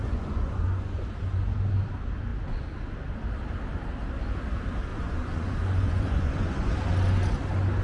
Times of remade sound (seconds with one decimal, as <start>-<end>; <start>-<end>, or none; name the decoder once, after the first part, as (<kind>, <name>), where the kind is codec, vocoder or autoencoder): 0.0-1.1 (vocoder, Vocos); 4.9-6.7